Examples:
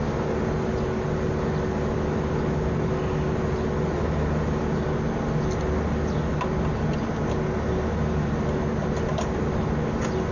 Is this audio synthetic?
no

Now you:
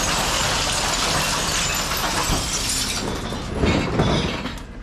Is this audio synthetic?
no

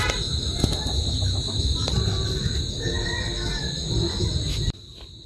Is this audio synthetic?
no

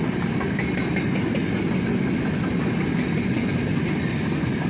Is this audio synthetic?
no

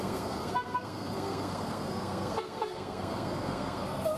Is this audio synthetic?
yes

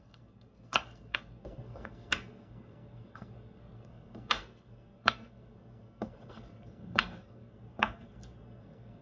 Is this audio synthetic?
yes